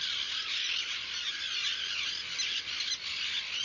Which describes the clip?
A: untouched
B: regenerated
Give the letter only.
A